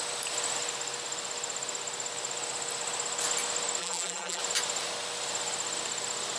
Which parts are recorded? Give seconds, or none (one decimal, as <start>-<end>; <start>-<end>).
0.0-3.8; 4.4-6.4